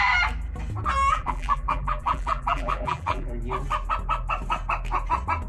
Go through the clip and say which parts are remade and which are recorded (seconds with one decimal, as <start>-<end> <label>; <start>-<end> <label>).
0.0-1.1 recorded; 1.1-3.3 remade; 3.3-5.5 recorded